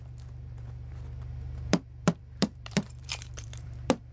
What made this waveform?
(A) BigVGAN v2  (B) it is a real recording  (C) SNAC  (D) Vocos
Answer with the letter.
A